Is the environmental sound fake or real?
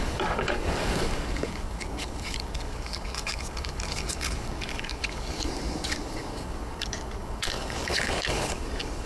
fake